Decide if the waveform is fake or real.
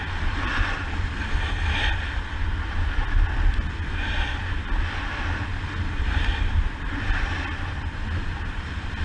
real